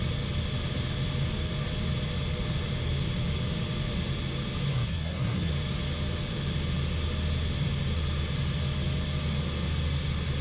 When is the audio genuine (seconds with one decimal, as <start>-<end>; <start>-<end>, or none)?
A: 0.0-4.7; 5.5-10.4